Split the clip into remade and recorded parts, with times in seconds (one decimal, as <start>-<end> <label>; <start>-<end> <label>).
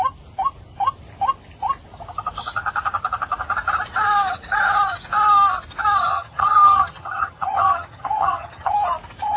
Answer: 0.0-6.1 recorded; 6.1-8.7 remade; 8.7-9.4 recorded